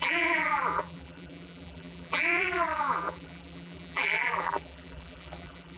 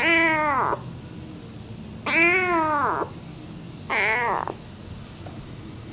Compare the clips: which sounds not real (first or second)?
first